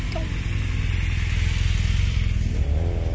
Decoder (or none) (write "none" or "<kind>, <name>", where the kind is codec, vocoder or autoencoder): none